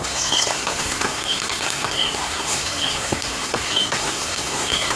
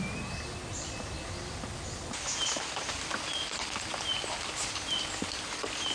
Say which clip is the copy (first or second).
first